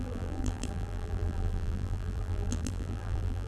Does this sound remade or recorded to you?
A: remade